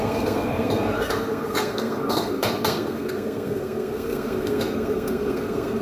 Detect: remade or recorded remade